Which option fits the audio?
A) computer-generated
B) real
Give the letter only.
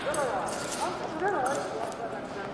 B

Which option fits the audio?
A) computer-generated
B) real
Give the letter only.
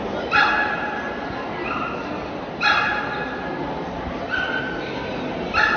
B